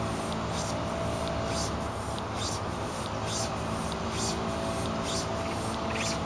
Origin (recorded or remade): recorded